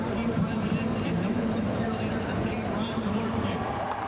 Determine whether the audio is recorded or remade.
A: remade